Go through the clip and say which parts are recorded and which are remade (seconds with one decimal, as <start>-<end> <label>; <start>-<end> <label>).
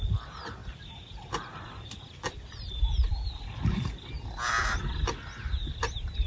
0.0-0.6 recorded; 0.6-2.7 remade; 2.7-6.3 recorded